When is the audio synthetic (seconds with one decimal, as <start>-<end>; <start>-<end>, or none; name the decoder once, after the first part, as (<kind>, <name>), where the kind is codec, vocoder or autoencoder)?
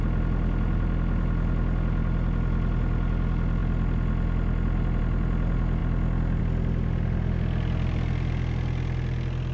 none